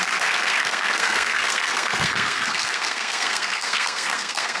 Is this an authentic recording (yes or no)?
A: no